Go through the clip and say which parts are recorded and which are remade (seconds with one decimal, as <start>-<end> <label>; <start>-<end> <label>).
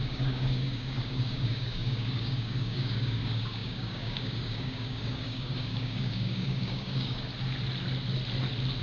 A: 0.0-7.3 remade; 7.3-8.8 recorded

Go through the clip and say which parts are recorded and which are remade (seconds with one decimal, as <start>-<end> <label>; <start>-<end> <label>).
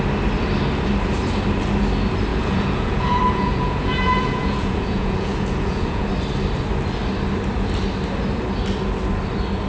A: 0.0-2.3 recorded; 2.3-6.1 remade; 6.1-9.7 recorded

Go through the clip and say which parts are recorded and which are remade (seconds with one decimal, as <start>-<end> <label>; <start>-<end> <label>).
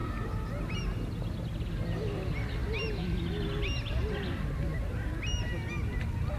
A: 0.0-6.4 recorded